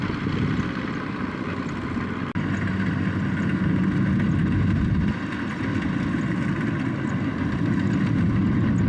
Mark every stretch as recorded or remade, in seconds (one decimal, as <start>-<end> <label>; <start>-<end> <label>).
0.0-8.9 recorded